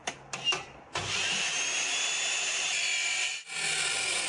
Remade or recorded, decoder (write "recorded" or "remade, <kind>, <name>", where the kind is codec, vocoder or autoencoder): recorded